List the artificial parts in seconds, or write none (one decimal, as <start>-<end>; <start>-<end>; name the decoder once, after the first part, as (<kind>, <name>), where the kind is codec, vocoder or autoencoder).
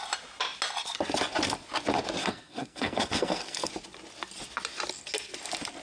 2.2-3.7 (codec, SNAC)